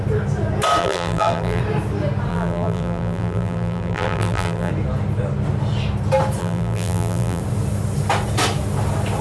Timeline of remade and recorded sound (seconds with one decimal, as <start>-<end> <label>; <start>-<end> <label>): 0.0-0.8 recorded; 0.8-1.6 remade; 1.6-2.3 recorded; 2.3-4.7 remade; 4.7-6.4 recorded; 6.4-7.4 remade; 7.4-9.2 recorded